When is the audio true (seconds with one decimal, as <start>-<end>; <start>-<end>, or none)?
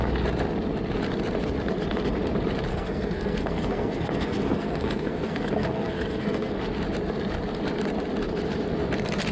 0.0-2.7; 6.5-9.3